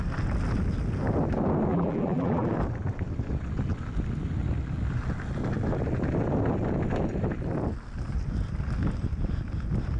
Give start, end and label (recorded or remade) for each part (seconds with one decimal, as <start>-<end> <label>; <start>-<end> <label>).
0.0-1.7 recorded; 1.7-2.5 remade; 2.5-10.0 recorded